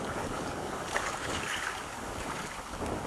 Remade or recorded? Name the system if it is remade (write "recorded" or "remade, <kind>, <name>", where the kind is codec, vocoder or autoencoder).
remade, codec, DAC